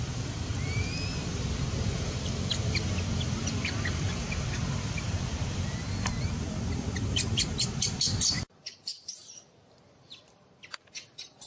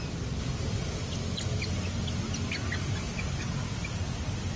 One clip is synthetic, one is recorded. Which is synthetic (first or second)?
first